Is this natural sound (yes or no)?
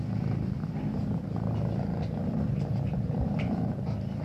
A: yes